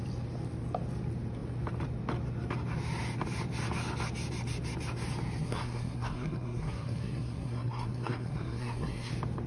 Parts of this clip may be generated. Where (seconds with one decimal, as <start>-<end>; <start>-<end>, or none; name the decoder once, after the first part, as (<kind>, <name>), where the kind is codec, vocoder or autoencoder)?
5.4-9.1 (codec, SNAC)